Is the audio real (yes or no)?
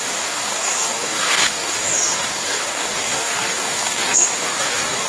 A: no